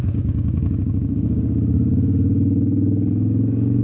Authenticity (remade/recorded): remade